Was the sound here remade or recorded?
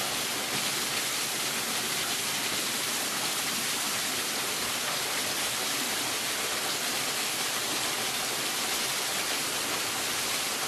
recorded